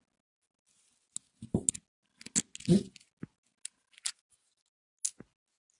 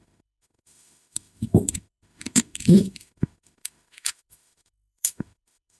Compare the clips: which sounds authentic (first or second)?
first